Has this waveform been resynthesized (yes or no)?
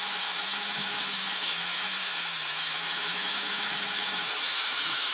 yes